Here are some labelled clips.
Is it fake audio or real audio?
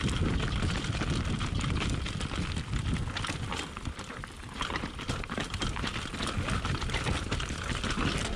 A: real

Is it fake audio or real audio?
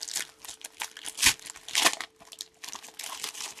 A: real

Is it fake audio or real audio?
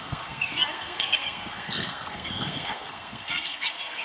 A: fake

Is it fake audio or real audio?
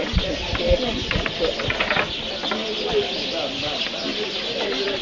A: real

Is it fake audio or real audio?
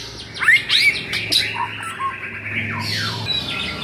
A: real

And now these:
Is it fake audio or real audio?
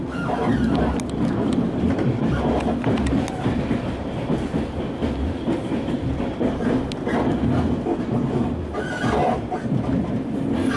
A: real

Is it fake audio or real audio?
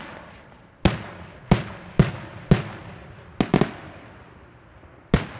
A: real